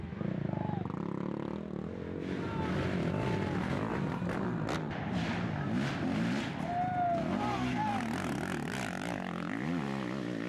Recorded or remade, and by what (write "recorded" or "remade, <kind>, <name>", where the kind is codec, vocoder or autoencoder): recorded